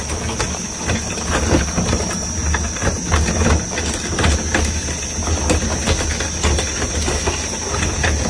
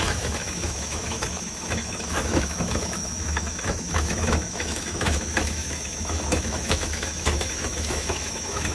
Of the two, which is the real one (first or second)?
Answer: first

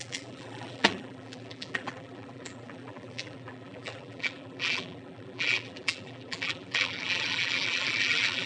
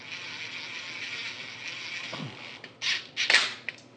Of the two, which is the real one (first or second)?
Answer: second